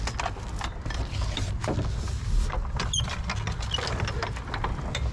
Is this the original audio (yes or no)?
yes